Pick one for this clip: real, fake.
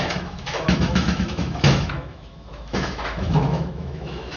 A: fake